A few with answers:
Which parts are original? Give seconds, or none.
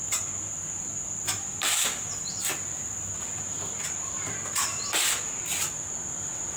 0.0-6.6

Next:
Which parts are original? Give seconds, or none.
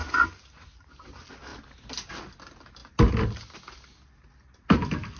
0.0-5.2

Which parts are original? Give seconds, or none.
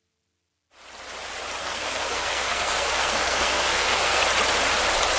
0.0-1.6; 4.2-5.2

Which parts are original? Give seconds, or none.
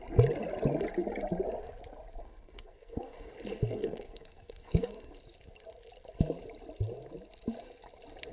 0.0-2.2; 3.3-3.7; 5.2-8.3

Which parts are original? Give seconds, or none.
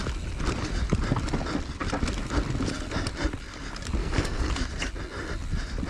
0.0-4.0; 4.5-5.9